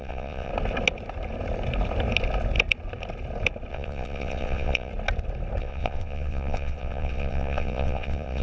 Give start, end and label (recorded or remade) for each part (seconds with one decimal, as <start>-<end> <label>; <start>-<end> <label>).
0.0-0.5 remade; 0.5-3.7 recorded; 3.7-4.9 remade; 4.9-5.6 recorded; 5.6-8.4 remade